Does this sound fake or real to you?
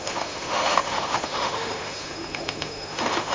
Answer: fake